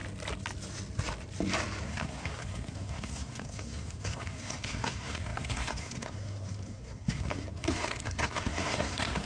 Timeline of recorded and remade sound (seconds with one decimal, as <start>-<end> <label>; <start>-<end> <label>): 0.0-1.8 recorded; 1.8-9.3 remade